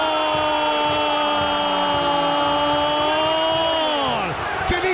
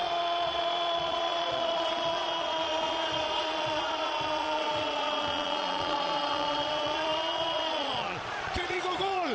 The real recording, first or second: first